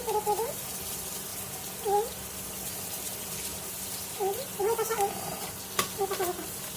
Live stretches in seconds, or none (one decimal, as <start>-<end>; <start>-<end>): 0.0-6.8